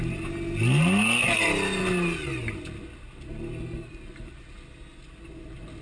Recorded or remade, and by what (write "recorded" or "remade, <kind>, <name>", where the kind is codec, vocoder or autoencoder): recorded